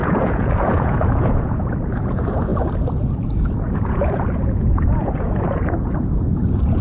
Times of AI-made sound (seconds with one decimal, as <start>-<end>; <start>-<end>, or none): 0.0-2.5; 3.0-6.8